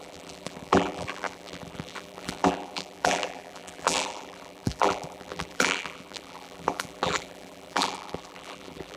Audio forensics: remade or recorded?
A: remade